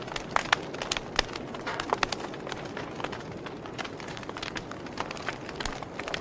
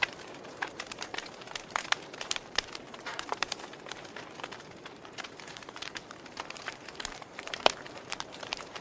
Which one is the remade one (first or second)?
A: second